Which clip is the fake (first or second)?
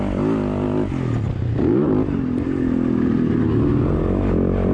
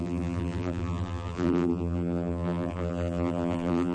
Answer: second